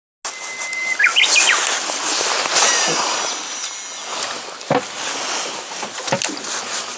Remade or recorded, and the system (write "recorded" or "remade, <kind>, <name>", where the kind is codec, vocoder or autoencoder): recorded